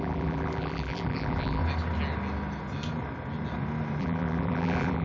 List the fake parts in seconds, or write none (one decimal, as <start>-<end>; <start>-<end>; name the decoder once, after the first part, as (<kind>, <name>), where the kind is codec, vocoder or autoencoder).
0.0-1.6 (vocoder, BigVGAN v2); 4.0-5.0